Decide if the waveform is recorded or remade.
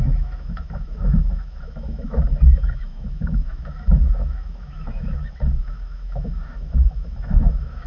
remade